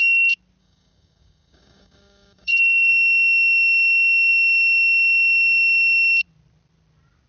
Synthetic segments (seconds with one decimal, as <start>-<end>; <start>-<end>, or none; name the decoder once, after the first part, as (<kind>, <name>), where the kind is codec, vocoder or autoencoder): 0.6-2.9 (codec, DAC)